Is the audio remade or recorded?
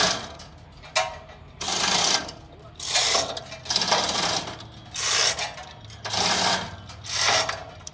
recorded